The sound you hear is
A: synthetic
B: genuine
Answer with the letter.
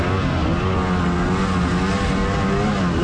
B